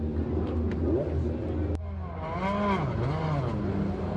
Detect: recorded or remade recorded